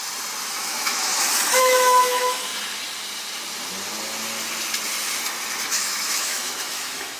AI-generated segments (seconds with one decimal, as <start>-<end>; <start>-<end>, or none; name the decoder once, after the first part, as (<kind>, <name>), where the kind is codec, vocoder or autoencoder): 0.6-1.1 (autoencoder, DAC-VAE); 1.6-2.5; 5.7-7.2

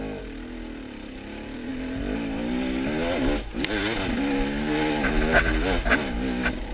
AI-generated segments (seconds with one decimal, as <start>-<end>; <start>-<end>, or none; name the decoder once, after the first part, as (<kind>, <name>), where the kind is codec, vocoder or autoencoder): none